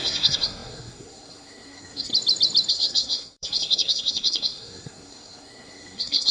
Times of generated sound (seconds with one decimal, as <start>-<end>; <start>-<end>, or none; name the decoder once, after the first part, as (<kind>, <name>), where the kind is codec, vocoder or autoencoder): 0.0-2.1 (codec, SNAC); 2.7-6.3